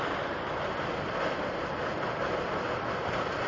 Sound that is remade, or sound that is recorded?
recorded